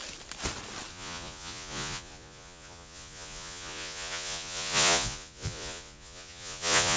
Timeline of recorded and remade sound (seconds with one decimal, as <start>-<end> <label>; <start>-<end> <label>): 0.0-0.9 recorded; 0.9-7.0 remade